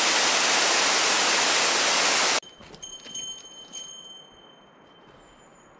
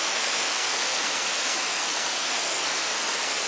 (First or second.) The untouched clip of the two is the first